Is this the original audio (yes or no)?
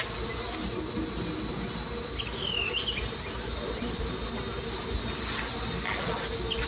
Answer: yes